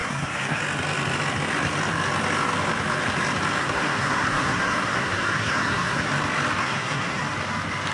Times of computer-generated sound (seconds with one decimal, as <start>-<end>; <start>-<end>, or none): 0.0-0.6; 3.6-6.1; 6.6-7.2